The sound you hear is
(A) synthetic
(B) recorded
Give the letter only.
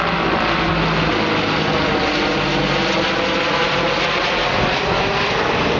B